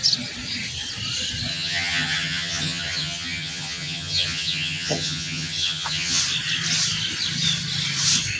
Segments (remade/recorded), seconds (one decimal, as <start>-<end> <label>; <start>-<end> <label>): 0.0-1.5 recorded; 1.5-6.2 remade; 6.2-8.4 recorded